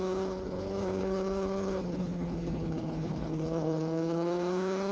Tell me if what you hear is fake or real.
fake